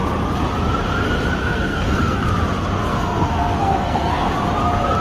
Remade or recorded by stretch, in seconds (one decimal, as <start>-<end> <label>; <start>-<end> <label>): 0.0-1.4 recorded; 1.4-2.3 remade; 2.3-2.9 recorded; 2.9-4.3 remade; 4.3-5.0 recorded